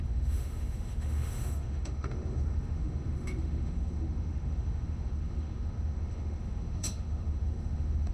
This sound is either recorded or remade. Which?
remade